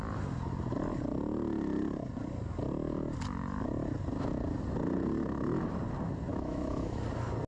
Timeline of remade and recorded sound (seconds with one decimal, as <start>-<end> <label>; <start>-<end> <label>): 0.0-6.3 recorded; 6.3-7.0 remade; 7.0-7.5 recorded